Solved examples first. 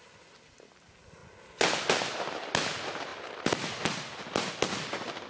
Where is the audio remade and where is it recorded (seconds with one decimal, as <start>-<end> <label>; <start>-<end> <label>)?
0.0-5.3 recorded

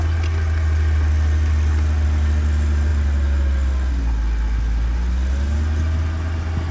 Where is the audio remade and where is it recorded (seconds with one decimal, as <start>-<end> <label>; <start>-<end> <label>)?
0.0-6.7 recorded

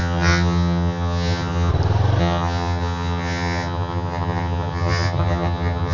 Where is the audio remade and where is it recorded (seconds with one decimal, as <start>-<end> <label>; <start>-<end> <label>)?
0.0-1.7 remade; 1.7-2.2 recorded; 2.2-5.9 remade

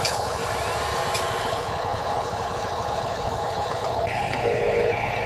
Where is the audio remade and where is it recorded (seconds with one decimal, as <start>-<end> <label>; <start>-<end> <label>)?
0.0-0.4 remade; 0.4-1.4 recorded; 1.4-5.3 remade